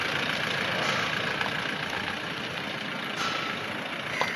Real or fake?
real